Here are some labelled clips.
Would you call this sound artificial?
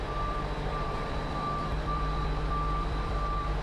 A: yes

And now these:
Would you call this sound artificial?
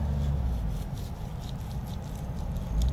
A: no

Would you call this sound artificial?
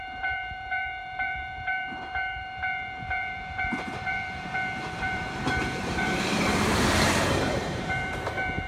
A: yes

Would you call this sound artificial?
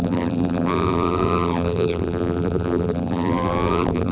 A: yes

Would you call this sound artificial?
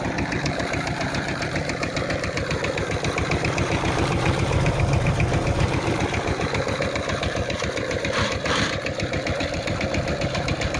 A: yes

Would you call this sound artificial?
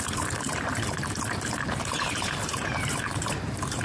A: yes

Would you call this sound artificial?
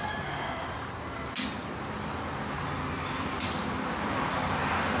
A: no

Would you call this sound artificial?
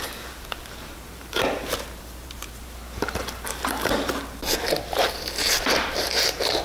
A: yes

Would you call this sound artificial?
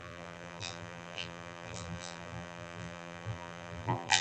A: yes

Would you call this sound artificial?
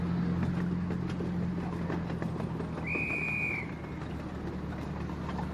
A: no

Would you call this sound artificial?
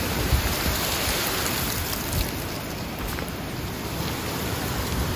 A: yes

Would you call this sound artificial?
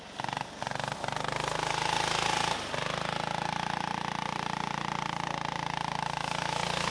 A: no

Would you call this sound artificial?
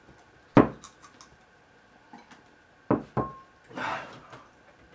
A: no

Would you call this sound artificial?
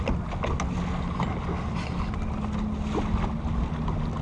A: no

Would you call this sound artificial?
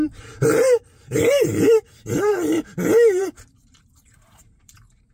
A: yes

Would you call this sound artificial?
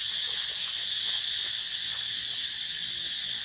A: no